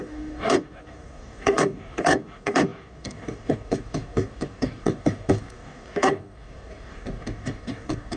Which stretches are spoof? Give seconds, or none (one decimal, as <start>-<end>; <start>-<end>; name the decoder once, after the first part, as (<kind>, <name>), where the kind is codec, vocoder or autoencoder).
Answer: 0.0-8.2 (codec, DAC)